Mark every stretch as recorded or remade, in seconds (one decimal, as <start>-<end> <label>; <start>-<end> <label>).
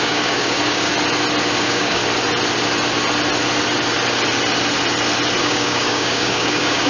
0.0-0.9 remade; 0.9-1.6 recorded; 1.6-2.0 remade; 2.0-5.4 recorded; 5.4-6.9 remade